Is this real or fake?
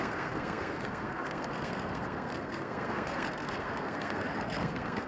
fake